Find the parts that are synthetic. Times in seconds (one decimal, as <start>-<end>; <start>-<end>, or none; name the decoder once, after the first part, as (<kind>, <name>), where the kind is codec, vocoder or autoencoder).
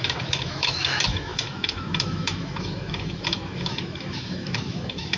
0.0-5.2 (autoencoder, DAC-VAE)